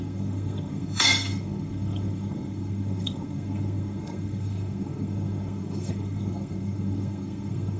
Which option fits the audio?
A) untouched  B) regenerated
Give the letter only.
B